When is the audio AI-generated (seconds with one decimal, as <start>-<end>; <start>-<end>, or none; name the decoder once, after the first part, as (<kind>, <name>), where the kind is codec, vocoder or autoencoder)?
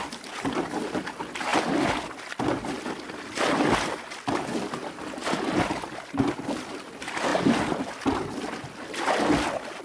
none